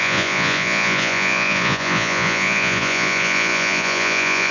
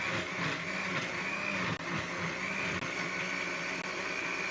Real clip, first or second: second